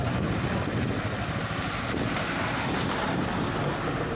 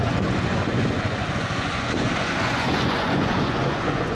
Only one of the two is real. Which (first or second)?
first